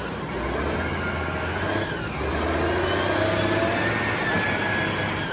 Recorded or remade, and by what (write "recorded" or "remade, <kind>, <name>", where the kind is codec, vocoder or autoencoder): recorded